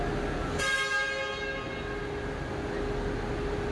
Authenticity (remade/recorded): recorded